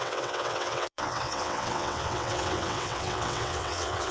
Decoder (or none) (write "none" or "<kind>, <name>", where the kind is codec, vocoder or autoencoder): vocoder, WaveNeXt